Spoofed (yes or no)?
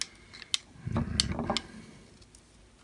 no